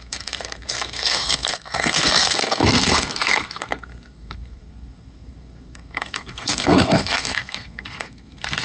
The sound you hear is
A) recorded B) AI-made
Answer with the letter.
B